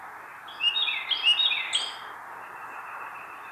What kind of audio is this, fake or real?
real